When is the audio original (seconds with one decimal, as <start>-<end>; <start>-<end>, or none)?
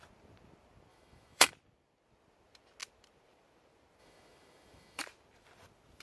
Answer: 0.0-0.9; 1.5-4.0; 5.0-6.0